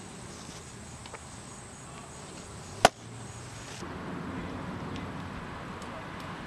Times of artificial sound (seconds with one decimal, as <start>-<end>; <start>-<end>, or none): none